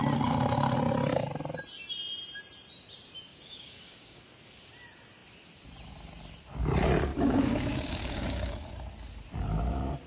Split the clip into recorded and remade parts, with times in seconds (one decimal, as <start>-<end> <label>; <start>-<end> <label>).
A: 0.0-3.3 recorded; 3.3-4.2 remade; 4.2-7.1 recorded; 7.1-8.5 remade; 8.5-10.1 recorded